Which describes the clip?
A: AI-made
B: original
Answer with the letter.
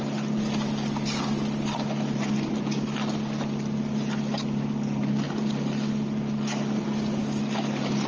B